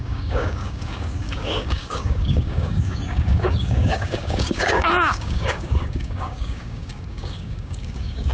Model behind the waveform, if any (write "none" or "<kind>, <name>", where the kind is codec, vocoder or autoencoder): codec, DAC